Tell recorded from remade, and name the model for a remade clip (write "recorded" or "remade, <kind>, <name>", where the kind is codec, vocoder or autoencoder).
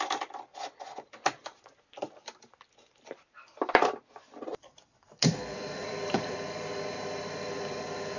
remade, vocoder, BigVGAN v2